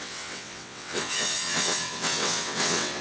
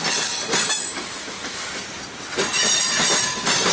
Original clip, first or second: second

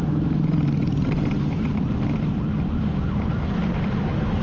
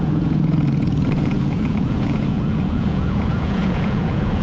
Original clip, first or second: first